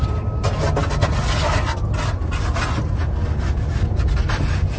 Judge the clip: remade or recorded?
recorded